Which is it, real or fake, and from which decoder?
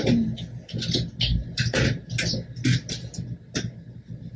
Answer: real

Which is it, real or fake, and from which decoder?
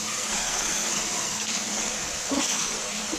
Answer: fake, codec, SNAC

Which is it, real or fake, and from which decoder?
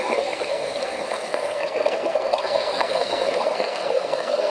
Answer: fake, codec, SNAC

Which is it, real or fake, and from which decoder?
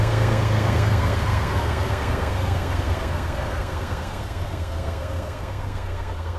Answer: fake, codec, SNAC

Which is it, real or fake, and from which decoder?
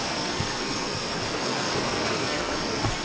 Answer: fake, codec, SNAC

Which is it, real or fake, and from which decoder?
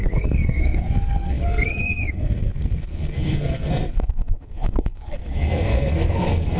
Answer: fake, codec, SNAC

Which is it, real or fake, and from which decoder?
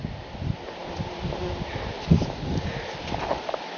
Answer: real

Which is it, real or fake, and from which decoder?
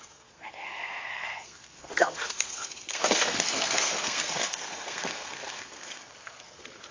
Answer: fake, codec, SNAC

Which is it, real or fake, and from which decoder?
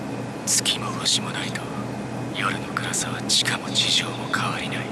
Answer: real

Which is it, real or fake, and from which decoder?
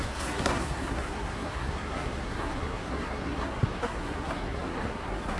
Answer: fake, codec, SNAC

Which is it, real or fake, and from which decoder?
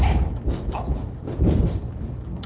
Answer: real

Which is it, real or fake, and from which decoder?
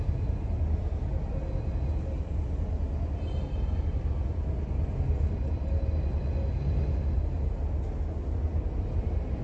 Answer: real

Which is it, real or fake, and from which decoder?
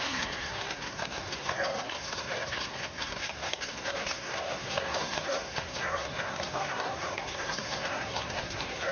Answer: fake, codec, SNAC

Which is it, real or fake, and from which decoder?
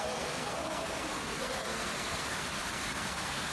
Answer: fake, codec, SNAC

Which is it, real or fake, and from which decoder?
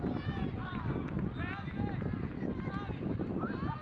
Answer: real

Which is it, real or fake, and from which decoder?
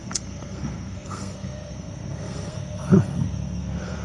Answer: fake, codec, SNAC